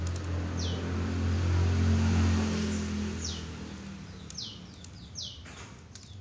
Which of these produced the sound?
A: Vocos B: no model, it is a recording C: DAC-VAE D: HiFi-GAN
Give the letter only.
B